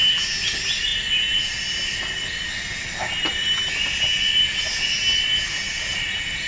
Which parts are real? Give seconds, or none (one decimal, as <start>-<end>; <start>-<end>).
0.0-6.5

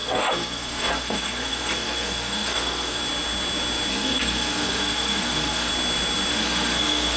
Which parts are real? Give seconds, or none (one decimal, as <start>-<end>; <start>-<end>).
3.0-3.9; 5.7-6.3